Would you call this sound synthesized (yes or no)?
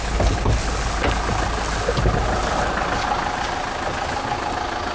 no